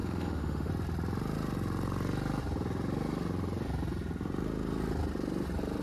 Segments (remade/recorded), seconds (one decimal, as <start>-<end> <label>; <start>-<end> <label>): 0.0-0.7 remade; 0.7-5.8 recorded